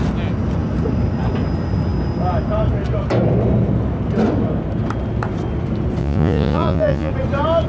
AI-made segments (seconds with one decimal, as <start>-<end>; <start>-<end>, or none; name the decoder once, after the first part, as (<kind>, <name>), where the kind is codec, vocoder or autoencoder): 6.0-7.1 (vocoder, Vocos)